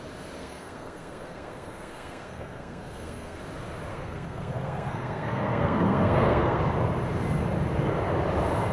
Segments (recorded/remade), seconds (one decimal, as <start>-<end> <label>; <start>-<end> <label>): 0.0-0.4 recorded; 0.4-3.4 remade; 3.4-3.9 recorded; 3.9-6.6 remade; 6.6-8.7 recorded